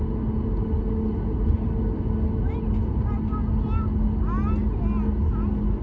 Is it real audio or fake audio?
real